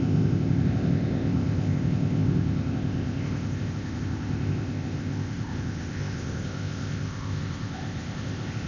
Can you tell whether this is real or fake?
fake